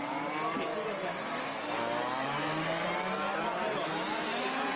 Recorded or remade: recorded